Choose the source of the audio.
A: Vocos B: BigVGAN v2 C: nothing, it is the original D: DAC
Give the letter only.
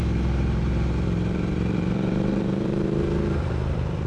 B